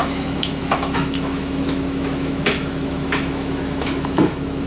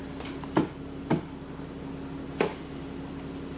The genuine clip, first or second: second